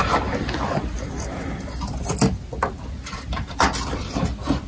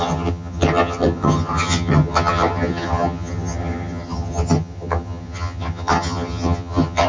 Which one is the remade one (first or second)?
second